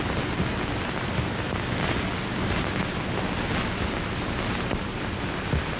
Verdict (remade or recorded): recorded